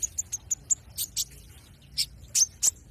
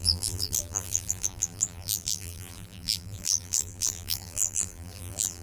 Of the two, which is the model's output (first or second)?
second